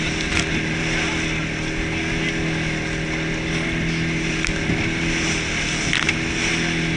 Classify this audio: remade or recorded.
recorded